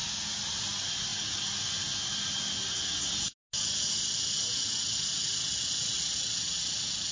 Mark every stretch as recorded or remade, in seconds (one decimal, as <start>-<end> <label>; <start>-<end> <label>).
0.0-7.1 recorded